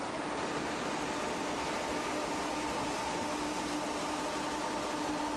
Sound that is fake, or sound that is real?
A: real